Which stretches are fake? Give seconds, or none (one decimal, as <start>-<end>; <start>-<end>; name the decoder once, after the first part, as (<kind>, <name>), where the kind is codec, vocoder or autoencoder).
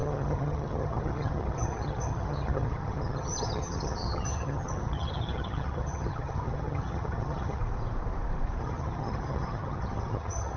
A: 0.0-7.6 (vocoder, HiFi-GAN); 8.6-10.6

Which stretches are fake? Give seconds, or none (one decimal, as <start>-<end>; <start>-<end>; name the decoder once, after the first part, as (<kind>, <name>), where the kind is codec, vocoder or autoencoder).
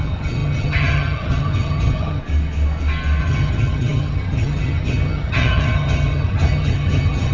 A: 0.0-2.2 (vocoder, HiFi-GAN); 3.2-7.3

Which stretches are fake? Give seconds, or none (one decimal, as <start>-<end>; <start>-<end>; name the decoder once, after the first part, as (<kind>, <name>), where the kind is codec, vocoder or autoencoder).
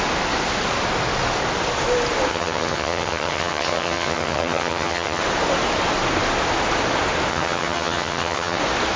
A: 2.3-5.2 (vocoder, HiFi-GAN); 7.3-8.6